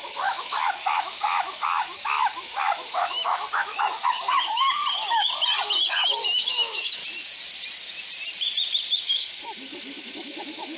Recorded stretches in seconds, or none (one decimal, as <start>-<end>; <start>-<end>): 4.8-5.9; 7.0-9.0